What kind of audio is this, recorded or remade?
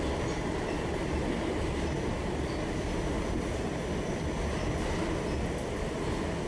recorded